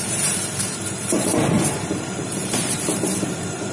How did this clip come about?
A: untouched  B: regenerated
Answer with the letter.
B